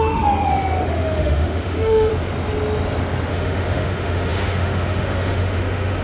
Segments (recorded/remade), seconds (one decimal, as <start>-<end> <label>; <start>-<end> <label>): 0.0-2.1 remade; 2.1-3.3 recorded; 3.3-6.0 remade